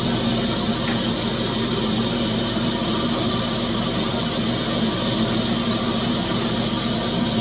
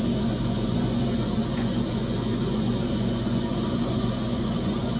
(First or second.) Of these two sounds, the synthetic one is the second